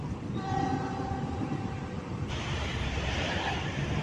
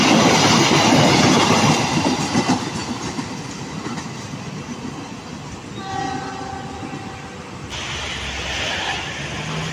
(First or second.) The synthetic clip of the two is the first